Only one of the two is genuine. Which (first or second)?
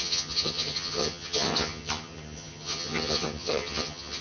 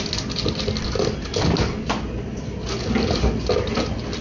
second